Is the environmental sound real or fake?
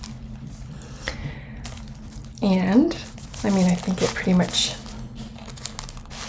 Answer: real